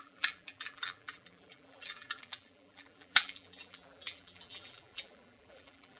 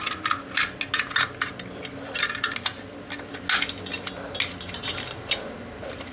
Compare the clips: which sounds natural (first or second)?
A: second